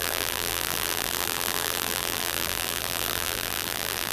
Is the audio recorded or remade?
remade